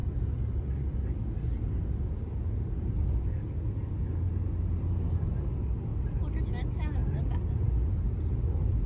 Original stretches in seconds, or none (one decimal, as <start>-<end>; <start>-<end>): 0.0-8.9